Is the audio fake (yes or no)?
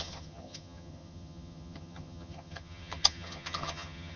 yes